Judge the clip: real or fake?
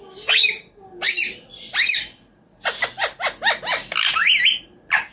real